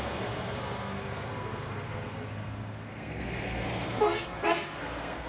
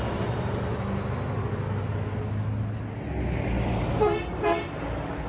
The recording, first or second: second